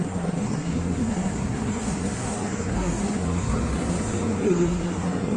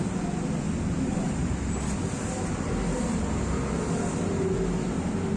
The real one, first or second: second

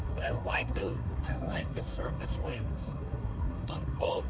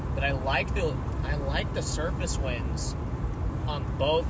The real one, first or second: second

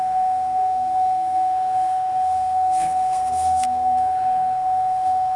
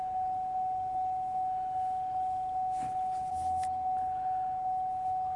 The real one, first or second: second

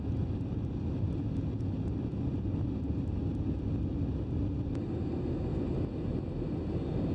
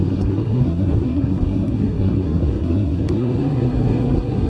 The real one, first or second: first